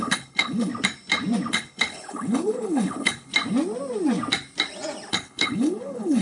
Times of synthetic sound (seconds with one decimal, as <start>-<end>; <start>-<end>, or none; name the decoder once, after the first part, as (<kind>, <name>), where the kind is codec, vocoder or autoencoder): 0.0-0.7 (codec, HILCodec); 1.5-3.3; 5.1-6.2